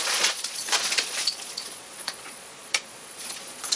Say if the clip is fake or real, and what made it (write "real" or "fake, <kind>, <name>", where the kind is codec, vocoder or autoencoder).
fake, vocoder, Vocos